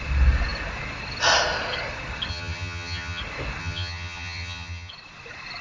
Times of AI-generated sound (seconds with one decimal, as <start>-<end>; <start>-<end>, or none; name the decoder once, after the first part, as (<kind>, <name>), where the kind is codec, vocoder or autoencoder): 2.3-3.2 (vocoder, HiFi-GAN); 3.6-4.9